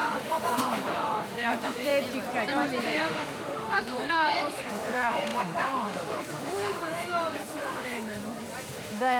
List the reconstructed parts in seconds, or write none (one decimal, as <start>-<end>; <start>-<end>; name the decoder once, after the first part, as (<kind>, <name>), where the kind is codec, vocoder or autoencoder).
0.0-1.9 (autoencoder, DAC-VAE); 2.8-8.2; 8.7-9.2